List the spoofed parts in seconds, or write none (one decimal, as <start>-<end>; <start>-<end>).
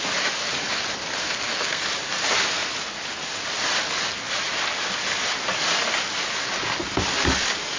1.2-1.8